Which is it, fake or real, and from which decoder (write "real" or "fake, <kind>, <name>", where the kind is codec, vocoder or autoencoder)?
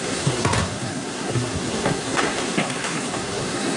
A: fake, codec, SNAC